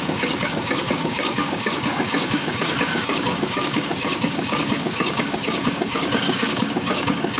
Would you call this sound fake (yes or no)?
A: yes